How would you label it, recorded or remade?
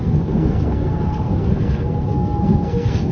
remade